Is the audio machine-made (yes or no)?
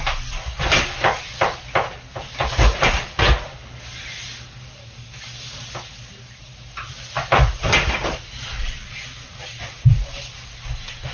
no